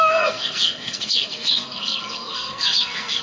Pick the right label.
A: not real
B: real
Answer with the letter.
A